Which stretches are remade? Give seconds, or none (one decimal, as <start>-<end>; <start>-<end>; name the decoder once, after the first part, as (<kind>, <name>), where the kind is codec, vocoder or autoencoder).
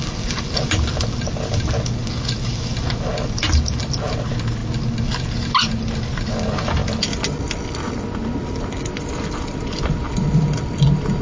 none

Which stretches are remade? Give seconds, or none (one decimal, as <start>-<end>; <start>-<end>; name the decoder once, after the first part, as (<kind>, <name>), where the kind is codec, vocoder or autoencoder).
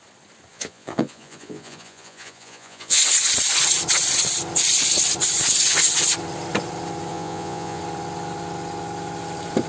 0.5-3.0 (vocoder, Vocos); 7.1-7.8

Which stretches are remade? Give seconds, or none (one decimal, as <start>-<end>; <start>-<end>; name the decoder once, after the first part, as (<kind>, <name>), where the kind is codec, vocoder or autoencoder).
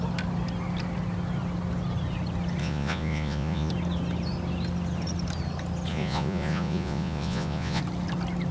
2.6-3.7 (vocoder, Vocos); 5.9-7.8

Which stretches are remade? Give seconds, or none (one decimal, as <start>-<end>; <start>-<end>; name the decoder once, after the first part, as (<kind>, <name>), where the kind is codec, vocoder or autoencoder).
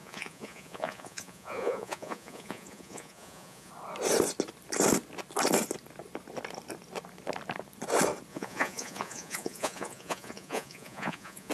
0.0-3.7 (vocoder, Vocos); 8.3-11.5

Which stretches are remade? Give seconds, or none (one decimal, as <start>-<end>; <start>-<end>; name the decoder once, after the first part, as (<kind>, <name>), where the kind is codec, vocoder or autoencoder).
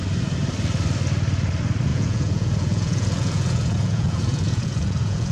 1.9-5.3 (vocoder, Vocos)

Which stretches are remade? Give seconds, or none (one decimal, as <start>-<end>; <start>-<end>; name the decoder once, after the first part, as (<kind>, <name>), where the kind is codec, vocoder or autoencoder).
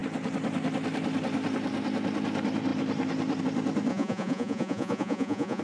3.9-5.6 (vocoder, Vocos)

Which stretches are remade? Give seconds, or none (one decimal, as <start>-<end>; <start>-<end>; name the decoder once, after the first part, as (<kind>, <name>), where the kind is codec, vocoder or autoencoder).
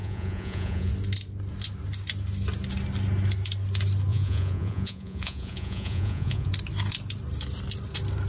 0.0-0.9 (vocoder, Vocos); 4.1-6.5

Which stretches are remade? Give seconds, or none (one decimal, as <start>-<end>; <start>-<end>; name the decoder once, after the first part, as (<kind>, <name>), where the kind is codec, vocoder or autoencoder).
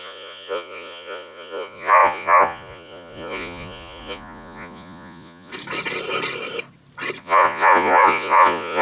0.0-5.5 (vocoder, Vocos); 7.2-8.8